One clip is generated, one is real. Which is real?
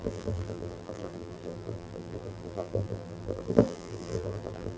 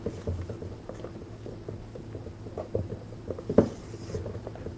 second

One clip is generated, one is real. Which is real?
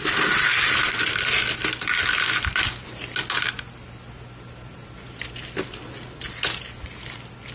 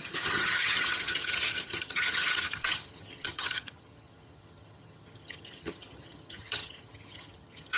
first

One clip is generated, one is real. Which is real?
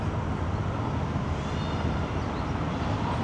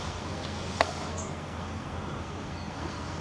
first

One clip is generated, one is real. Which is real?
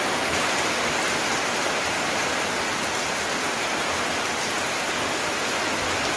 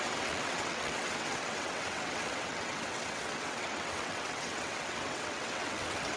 first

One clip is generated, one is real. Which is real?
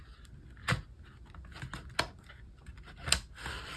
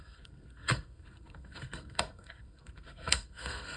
first